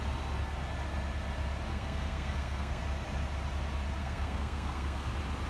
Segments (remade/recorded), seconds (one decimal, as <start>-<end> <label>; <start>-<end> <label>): 0.0-1.7 recorded; 1.7-2.8 remade; 2.8-4.0 recorded; 4.0-5.1 remade; 5.1-5.5 recorded